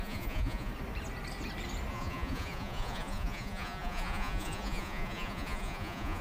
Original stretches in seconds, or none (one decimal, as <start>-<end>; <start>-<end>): 0.7-1.9